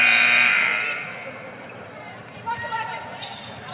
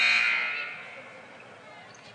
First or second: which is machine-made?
first